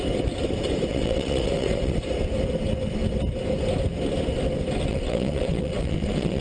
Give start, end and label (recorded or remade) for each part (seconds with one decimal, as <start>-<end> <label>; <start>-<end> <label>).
0.0-0.9 recorded; 0.9-2.0 remade; 2.0-4.9 recorded; 4.9-6.4 remade